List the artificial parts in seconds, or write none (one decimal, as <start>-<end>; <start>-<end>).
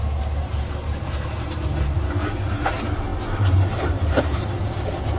0.0-5.2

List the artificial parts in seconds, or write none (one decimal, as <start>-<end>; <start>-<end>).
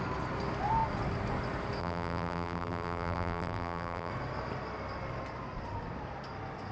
1.8-4.1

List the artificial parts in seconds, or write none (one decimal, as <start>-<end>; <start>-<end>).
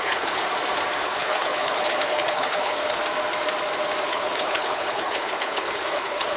0.0-0.4; 1.0-3.0; 4.1-6.4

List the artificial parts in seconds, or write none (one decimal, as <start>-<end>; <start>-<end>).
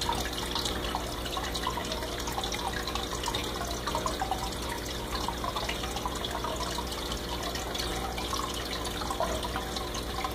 none